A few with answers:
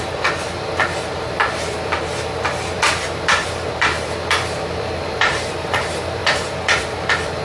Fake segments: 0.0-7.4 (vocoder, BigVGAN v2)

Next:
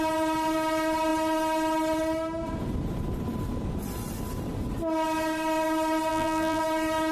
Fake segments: 6.1-6.6 (vocoder, BigVGAN v2)

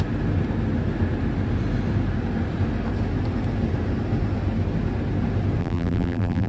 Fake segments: 5.6-6.5 (vocoder, BigVGAN v2)

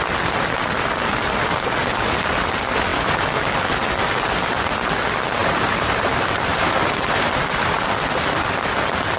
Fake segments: 5.4-6.1 (vocoder, BigVGAN v2); 6.5-7.9